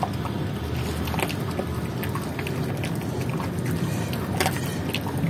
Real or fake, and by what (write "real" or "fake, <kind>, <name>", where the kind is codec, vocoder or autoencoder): real